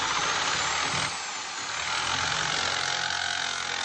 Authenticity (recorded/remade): recorded